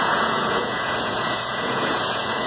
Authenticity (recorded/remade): remade